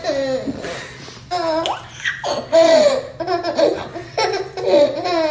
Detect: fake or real real